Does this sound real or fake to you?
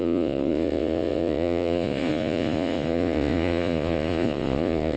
fake